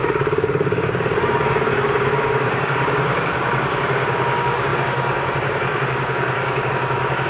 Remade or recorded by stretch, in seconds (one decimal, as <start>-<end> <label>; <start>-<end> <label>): 0.0-7.3 remade